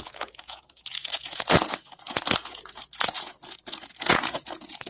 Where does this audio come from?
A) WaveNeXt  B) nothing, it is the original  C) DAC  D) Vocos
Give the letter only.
D